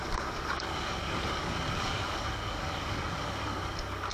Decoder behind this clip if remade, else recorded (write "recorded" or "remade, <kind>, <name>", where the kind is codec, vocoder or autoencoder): remade, codec, DAC